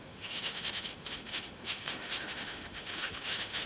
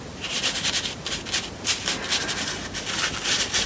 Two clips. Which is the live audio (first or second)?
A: second